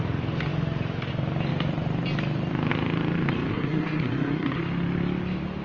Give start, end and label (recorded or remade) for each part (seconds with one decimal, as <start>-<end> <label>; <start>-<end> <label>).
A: 0.0-3.5 recorded; 3.5-4.6 remade; 4.6-5.6 recorded